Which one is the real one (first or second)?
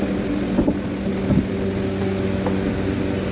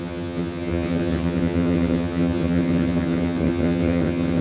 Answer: first